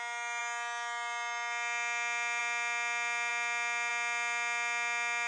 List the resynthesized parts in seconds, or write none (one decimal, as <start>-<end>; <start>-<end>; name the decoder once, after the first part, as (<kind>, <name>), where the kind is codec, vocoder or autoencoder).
none